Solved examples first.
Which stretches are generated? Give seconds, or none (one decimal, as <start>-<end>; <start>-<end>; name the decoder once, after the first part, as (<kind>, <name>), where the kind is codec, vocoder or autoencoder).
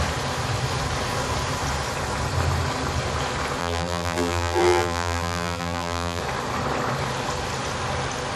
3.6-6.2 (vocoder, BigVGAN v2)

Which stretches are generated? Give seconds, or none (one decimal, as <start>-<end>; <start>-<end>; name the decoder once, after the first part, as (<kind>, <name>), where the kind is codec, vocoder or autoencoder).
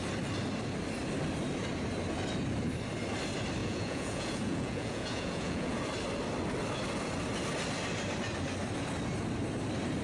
3.6-5.8 (vocoder, Vocos)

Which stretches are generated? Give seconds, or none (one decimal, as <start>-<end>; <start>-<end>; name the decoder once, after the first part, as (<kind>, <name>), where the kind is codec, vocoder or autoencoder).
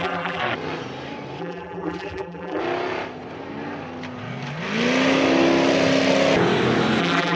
0.0-0.4 (vocoder, BigVGAN v2); 1.4-2.6; 7.0-7.4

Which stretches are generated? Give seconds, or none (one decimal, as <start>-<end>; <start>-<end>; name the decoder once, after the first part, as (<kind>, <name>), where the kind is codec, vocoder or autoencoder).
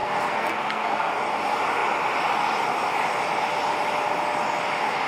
0.0-1.2 (codec, SNAC)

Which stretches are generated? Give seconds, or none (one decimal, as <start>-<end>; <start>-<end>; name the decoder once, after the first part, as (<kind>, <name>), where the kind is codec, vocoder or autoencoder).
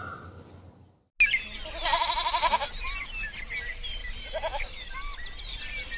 1.9-2.9 (vocoder, BigVGAN v2); 4.0-5.6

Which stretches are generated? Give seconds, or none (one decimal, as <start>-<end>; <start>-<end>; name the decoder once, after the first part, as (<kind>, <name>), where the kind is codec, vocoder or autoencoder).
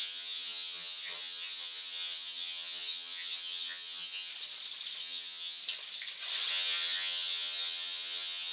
0.0-4.3 (vocoder, HiFi-GAN); 5.0-5.6; 6.5-8.5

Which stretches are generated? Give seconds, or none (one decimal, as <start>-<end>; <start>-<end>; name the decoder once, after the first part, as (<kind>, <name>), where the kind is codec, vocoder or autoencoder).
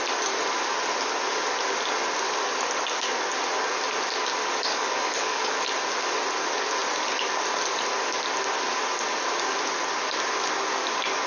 4.7-5.5 (codec, DAC)